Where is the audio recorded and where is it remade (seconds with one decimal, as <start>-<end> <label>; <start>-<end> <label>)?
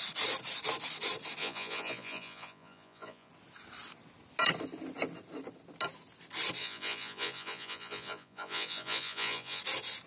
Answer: 0.0-1.4 recorded; 1.4-3.3 remade; 3.3-6.6 recorded; 6.6-9.6 remade; 9.6-10.1 recorded